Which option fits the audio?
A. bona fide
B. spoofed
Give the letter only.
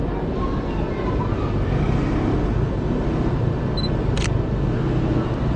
A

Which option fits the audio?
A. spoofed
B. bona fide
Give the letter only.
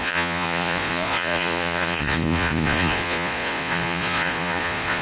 A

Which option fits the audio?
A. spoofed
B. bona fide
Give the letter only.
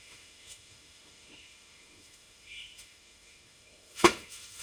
A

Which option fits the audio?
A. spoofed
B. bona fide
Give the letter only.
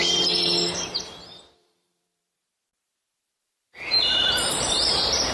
A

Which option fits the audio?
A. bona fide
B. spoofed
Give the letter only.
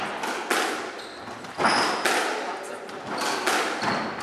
A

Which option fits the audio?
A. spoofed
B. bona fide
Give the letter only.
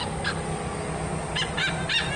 B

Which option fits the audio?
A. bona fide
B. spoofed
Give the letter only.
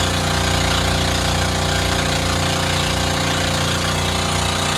A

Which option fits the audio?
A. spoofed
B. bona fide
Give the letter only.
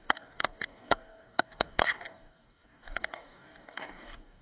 A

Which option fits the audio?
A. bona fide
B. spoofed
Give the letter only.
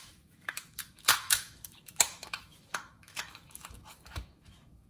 B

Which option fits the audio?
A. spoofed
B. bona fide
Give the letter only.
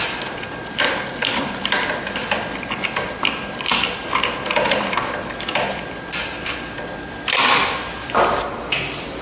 A